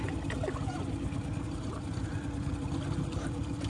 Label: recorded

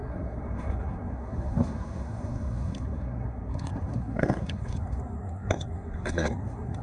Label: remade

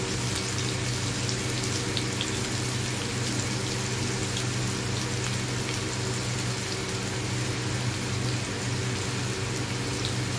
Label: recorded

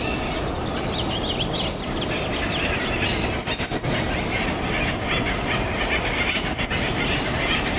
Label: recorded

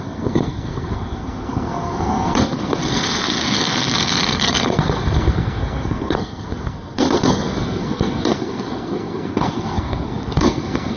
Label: remade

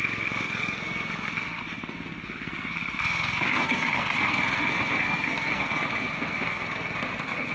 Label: remade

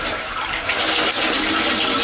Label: recorded